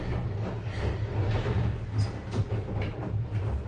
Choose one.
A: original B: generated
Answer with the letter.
A